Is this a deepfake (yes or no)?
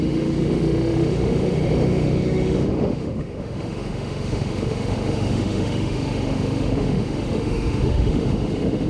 yes